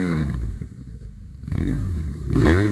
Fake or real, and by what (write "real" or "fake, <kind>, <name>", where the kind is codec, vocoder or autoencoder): fake, codec, SNAC